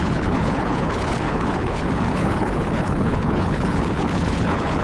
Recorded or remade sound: remade